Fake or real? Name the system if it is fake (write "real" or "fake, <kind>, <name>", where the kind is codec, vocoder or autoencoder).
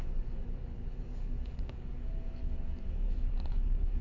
fake, codec, DAC